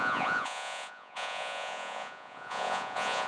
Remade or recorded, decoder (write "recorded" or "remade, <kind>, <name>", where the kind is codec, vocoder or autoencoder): remade, vocoder, Vocos